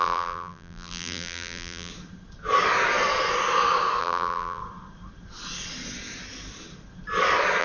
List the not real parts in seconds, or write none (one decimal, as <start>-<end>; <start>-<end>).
0.0-1.9; 4.0-4.6